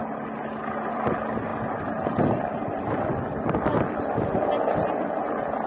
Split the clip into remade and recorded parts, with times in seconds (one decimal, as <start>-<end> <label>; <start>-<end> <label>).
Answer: 0.0-5.7 recorded